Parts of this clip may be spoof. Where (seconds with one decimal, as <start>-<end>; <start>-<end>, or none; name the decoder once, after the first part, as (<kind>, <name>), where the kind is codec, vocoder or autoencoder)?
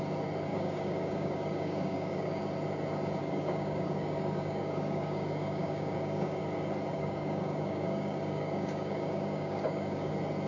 0.5-2.4 (codec, DAC); 3.2-6.4; 6.9-10.1